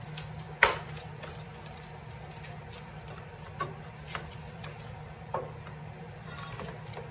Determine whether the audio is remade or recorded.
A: recorded